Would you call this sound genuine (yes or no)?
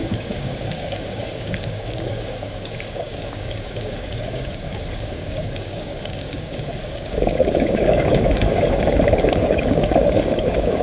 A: no